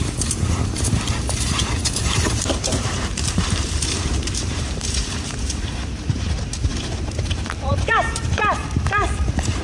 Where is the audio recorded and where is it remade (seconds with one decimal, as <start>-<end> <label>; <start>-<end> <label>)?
0.0-8.4 remade; 8.4-9.2 recorded; 9.2-9.6 remade